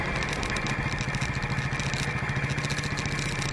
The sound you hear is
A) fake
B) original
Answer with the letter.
B